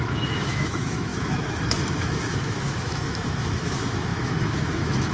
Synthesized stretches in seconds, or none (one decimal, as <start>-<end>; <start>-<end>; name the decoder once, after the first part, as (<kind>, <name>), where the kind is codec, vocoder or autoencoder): 0.0-5.1 (autoencoder, DAC-VAE)